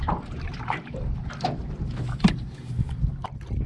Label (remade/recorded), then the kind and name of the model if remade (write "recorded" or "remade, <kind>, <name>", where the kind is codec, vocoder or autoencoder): recorded